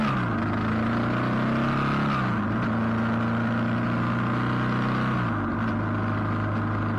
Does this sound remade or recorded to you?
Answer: recorded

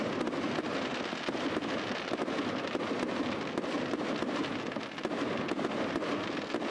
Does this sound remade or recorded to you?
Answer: recorded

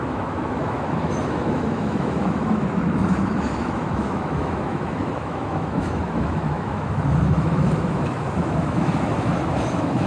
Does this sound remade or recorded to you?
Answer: remade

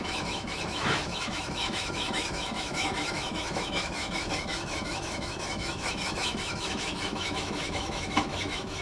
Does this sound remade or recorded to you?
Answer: remade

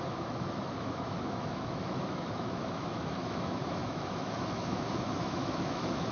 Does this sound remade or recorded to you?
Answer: remade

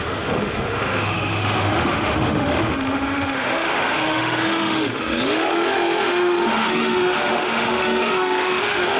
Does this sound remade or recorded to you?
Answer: remade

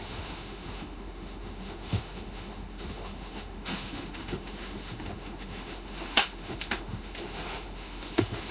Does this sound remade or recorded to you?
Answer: remade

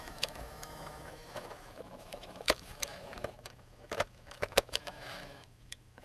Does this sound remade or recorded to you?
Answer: remade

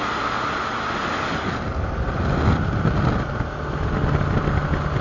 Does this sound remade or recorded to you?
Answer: recorded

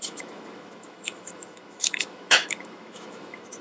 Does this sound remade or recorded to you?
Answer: remade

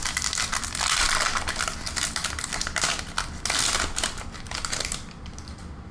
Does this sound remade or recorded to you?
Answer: recorded